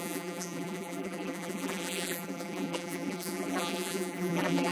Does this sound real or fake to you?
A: fake